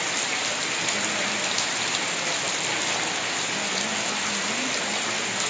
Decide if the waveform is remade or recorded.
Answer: recorded